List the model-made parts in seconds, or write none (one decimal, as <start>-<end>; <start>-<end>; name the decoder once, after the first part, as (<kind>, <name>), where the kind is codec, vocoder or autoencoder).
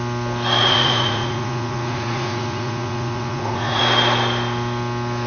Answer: 0.6-3.8 (vocoder, Vocos)